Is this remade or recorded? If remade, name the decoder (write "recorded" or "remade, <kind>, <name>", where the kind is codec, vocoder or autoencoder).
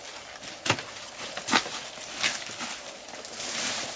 recorded